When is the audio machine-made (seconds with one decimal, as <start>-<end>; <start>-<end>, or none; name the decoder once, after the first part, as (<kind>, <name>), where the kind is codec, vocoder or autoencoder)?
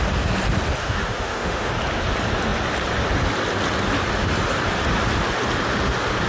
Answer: 0.8-1.7 (autoencoder, DAC-VAE)